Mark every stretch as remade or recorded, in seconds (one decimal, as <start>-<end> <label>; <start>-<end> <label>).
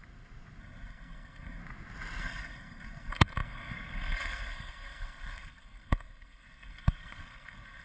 0.0-0.6 recorded; 0.6-1.6 remade; 1.6-2.2 recorded; 2.2-7.8 remade